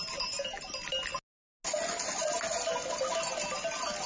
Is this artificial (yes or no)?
no